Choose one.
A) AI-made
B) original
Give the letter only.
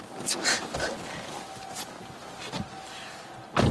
B